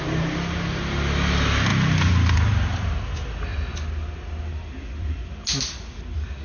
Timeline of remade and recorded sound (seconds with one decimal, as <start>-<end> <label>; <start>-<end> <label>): 0.0-6.4 recorded

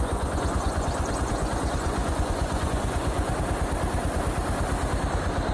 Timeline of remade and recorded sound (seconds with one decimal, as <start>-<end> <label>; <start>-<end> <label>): 0.0-3.3 remade; 3.3-5.5 recorded

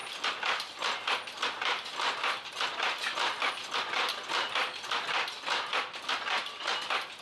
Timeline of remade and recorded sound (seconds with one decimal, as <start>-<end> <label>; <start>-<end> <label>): 0.0-7.2 recorded

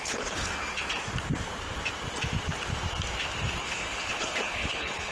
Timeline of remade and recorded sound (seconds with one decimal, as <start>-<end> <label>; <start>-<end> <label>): 0.0-0.5 remade; 0.5-3.6 recorded; 3.6-5.1 remade

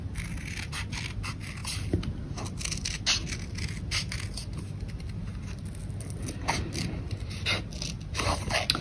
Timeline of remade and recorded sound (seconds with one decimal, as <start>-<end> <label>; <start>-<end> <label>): 0.0-8.8 recorded